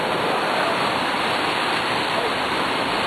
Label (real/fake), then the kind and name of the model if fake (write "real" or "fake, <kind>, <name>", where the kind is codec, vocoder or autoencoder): fake, vocoder, BigVGAN v2